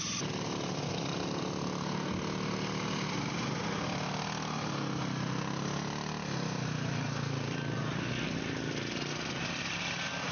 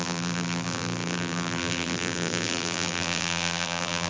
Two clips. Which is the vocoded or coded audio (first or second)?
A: second